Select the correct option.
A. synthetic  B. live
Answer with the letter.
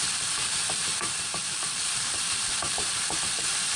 A